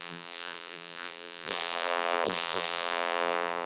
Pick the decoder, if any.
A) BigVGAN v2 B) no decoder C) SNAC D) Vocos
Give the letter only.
A